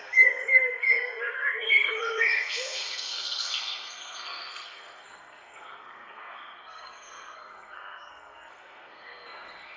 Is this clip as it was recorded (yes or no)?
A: no